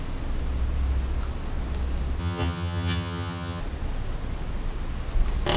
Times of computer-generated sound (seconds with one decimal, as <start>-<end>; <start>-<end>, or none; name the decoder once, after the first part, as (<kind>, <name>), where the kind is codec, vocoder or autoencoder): 2.2-3.6 (vocoder, HiFi-GAN)